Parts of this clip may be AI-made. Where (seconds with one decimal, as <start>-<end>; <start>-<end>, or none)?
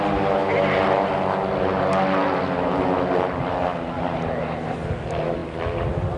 none